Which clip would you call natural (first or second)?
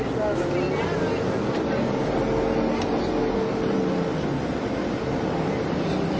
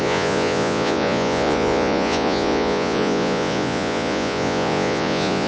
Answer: first